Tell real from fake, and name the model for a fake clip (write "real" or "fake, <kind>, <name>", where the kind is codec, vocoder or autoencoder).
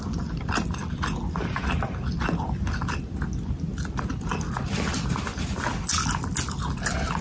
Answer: real